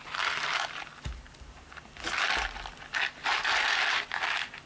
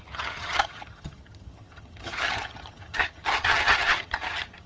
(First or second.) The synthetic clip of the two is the second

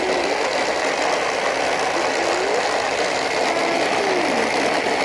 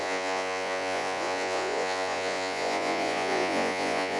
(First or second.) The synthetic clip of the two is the second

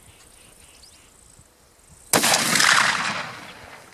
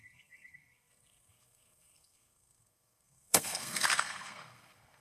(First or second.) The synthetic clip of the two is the second